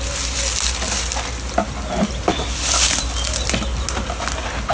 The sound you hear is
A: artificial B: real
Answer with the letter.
B